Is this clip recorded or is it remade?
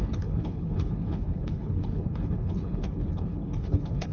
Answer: remade